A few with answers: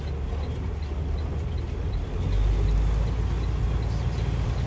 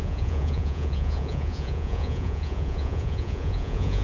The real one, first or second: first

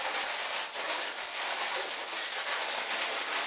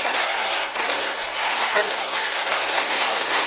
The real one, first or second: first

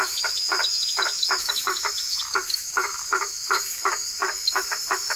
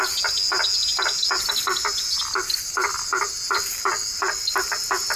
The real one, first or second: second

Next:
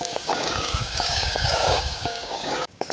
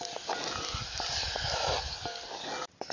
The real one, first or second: second